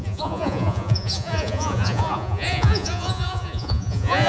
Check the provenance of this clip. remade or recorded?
remade